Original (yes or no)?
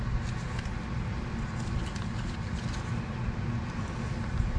yes